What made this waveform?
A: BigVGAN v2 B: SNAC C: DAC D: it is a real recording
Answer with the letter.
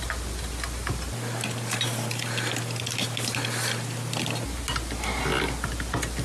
D